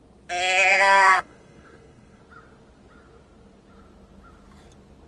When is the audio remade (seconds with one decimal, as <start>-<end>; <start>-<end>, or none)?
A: 0.7-2.2